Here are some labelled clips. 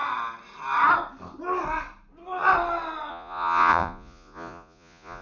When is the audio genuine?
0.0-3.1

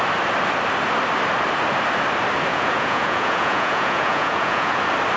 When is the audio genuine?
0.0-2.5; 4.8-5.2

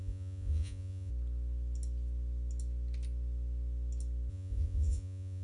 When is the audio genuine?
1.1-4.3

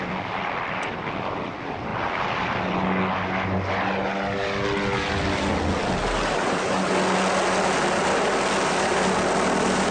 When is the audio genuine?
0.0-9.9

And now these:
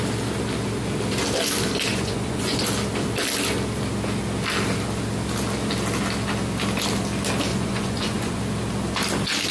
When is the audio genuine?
0.0-1.9; 2.6-7.5; 8.4-9.5

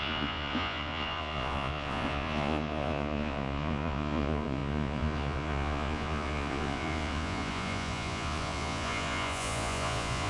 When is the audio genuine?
none

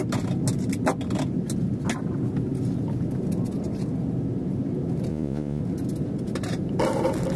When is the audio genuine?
0.0-5.1; 5.6-7.4